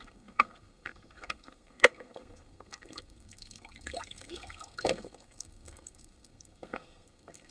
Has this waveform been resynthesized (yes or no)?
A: yes